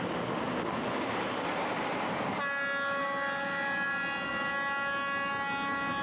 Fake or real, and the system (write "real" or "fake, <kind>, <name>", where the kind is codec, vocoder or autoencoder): real